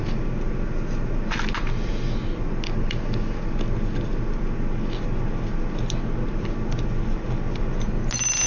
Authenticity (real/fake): real